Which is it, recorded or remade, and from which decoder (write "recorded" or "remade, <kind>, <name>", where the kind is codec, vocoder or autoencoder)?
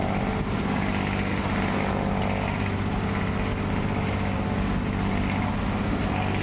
recorded